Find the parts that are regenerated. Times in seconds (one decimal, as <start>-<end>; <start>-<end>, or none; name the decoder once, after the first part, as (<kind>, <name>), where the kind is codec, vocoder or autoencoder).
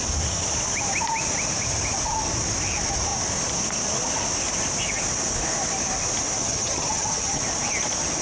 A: 6.4-7.4 (vocoder, HiFi-GAN)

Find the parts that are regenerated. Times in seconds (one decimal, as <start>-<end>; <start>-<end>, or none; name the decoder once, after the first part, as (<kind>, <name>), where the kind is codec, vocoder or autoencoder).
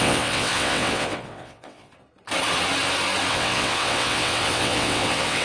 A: 0.0-1.9 (vocoder, WaveNeXt); 3.3-5.4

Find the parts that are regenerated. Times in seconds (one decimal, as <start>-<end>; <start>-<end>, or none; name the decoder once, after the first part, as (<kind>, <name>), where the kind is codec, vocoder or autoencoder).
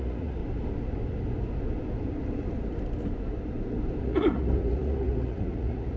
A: 0.0-0.4 (vocoder, Vocos); 4.0-6.0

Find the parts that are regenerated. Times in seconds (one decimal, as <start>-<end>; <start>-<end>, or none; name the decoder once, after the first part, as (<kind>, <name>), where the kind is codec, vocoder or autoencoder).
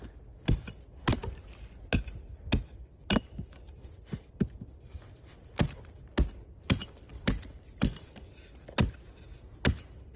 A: 7.1-7.8 (vocoder, BigVGAN v2)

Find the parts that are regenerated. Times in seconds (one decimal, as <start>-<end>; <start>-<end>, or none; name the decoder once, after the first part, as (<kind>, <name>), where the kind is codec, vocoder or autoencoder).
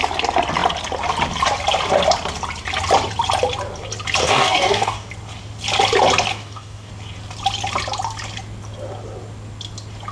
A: 4.2-5.1 (codec, DAC); 6.3-6.9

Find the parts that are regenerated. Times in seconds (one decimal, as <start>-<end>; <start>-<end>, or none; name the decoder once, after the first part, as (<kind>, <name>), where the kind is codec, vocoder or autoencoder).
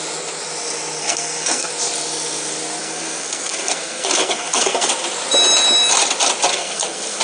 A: 1.0-1.7 (codec, SNAC); 2.8-4.9; 6.5-7.2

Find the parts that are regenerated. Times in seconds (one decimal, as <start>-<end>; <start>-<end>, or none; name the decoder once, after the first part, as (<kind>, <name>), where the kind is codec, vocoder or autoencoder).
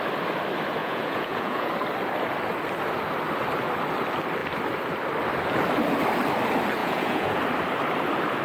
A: 0.8-1.7 (vocoder, Vocos); 6.8-7.4